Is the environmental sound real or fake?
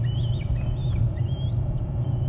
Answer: real